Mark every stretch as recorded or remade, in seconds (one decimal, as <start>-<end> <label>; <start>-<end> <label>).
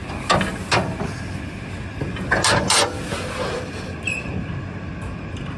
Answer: 0.0-5.6 recorded